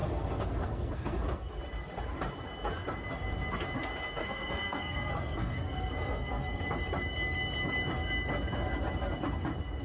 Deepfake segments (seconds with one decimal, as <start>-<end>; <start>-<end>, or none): 0.0-1.6; 4.2-6.6